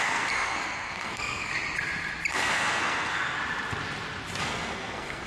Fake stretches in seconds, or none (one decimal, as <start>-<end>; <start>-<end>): 0.0-1.5; 2.3-3.4; 4.4-5.3